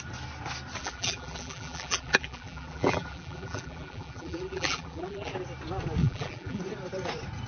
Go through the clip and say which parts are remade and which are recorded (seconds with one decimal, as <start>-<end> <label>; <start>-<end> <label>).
0.0-0.8 recorded; 0.8-5.3 remade; 5.3-6.0 recorded; 6.0-6.6 remade; 6.6-7.5 recorded